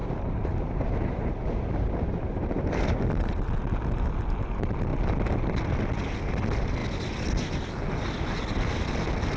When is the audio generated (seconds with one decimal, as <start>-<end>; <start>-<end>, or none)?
0.0-3.0